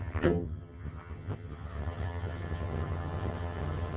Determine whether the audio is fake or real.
fake